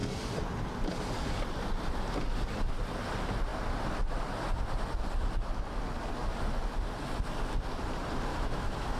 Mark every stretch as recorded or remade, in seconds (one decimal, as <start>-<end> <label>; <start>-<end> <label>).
0.0-8.3 recorded; 8.3-9.0 remade